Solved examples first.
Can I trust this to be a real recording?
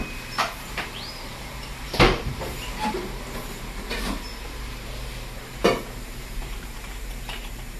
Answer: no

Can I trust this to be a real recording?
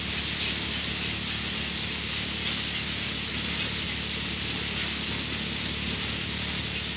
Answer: yes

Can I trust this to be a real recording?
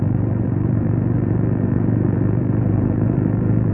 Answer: no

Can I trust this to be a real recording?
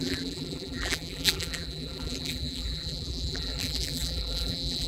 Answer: no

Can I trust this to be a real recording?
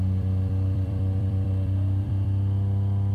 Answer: no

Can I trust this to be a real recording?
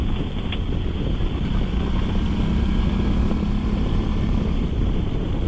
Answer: yes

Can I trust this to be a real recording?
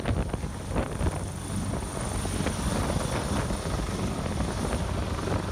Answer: yes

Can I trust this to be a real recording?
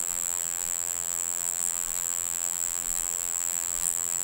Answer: no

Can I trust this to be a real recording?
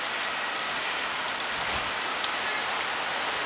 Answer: yes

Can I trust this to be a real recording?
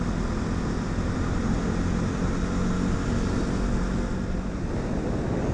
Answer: yes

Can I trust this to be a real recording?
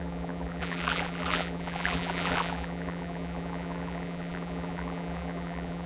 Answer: no